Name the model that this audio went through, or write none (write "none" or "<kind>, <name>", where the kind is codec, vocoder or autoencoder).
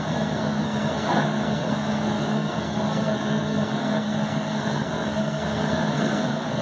codec, SNAC